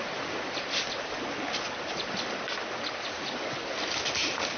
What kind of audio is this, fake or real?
real